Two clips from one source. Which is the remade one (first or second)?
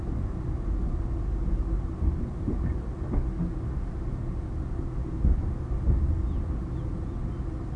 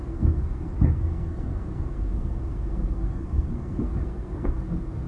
second